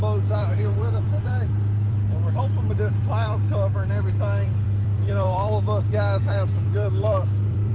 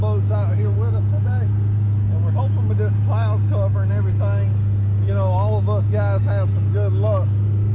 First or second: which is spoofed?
first